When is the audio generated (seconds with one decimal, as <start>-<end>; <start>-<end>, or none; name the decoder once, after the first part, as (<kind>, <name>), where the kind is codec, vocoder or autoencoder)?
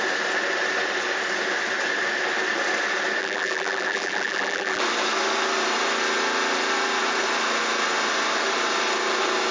3.2-4.8 (vocoder, BigVGAN v2)